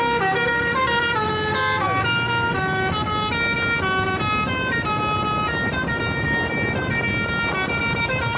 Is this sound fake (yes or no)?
no